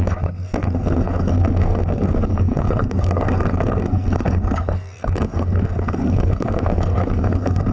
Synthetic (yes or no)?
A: yes